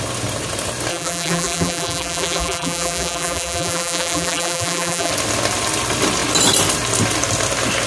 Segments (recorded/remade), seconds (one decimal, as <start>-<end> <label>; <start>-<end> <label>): 0.0-0.9 recorded; 0.9-5.1 remade; 5.1-7.9 recorded